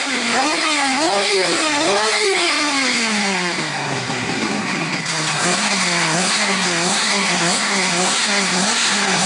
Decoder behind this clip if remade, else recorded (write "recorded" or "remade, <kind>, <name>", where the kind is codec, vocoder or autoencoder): remade, codec, SNAC